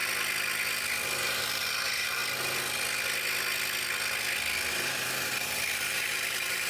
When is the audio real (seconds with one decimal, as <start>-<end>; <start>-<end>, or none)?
0.0-1.2; 2.2-4.7

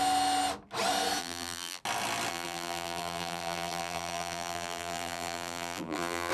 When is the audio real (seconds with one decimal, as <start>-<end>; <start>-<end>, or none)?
0.0-1.2; 1.8-2.3

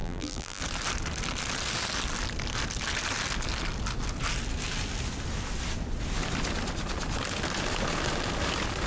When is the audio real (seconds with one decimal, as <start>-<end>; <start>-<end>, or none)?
0.6-8.9

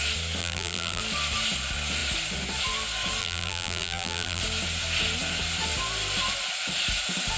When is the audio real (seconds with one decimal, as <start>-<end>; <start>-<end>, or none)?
0.0-0.4; 1.0-3.2; 4.4-7.4